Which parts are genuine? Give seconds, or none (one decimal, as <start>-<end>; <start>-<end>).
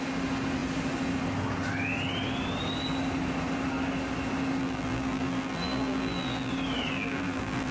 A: 0.0-4.6; 6.5-6.9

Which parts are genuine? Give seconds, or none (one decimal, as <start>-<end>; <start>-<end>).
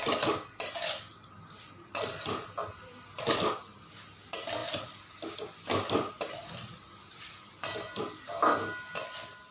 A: 0.0-2.6; 3.2-4.6; 5.5-9.5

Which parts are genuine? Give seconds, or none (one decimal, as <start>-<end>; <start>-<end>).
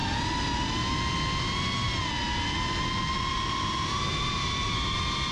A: 0.0-3.2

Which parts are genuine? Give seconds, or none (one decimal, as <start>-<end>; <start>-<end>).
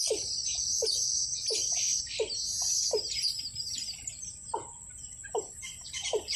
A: 0.0-0.4; 2.0-6.4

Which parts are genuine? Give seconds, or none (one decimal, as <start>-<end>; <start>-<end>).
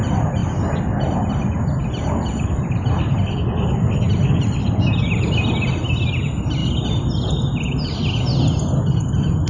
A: 0.0-9.5